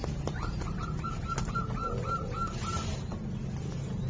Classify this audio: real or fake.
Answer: real